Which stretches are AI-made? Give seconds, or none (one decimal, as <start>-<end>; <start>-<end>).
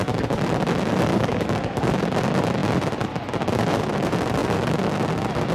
1.1-1.9